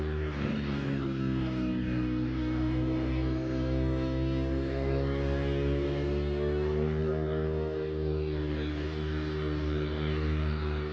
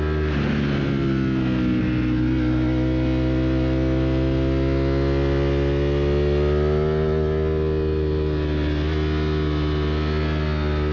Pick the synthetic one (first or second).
first